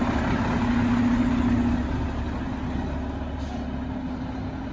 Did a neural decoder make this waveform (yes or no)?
no